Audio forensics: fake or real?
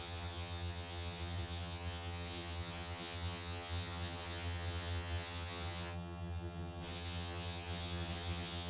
fake